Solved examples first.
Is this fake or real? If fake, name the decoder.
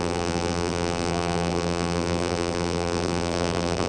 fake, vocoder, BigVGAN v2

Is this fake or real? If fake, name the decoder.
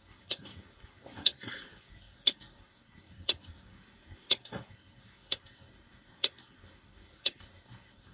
fake, codec, SNAC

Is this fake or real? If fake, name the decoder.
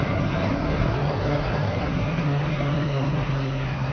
fake, codec, SNAC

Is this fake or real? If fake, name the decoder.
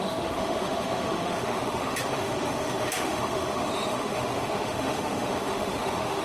fake, autoencoder, DAC-VAE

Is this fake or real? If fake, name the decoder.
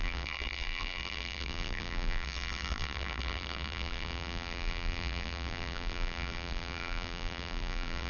fake, vocoder, BigVGAN v2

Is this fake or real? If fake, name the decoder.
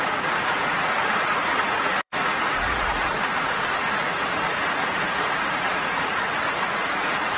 fake, vocoder, Vocos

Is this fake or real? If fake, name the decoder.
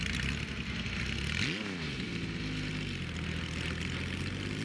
real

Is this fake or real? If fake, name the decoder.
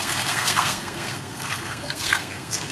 fake, codec, SNAC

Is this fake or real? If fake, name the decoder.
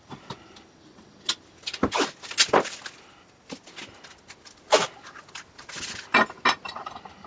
real